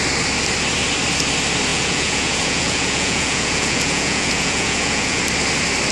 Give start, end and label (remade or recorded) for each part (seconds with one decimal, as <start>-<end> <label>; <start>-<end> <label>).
0.0-1.7 recorded; 1.7-5.2 remade; 5.2-5.9 recorded